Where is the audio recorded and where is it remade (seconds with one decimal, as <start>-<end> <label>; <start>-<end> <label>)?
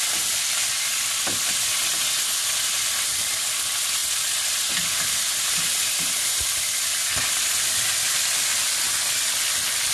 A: 0.0-9.9 recorded